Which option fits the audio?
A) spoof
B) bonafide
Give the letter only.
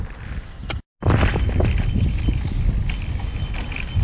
B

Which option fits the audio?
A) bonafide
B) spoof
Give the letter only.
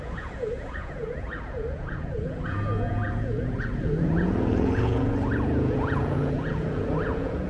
B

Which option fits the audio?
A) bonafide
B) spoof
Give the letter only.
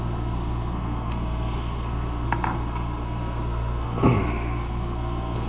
B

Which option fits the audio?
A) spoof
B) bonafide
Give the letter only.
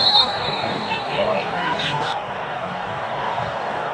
A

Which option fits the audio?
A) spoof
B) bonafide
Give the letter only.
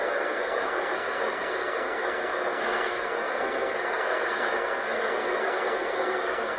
A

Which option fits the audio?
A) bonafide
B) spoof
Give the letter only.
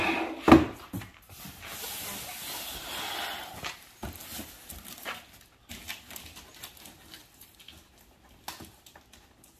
A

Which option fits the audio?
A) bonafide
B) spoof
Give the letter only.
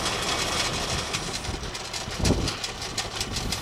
A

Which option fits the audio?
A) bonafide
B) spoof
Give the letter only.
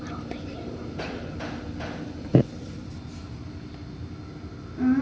A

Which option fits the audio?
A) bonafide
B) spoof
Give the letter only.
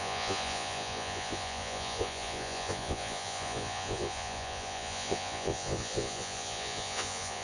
B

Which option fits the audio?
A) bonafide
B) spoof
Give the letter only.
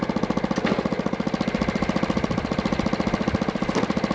A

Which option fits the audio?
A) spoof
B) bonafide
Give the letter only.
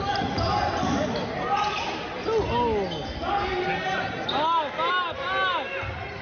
B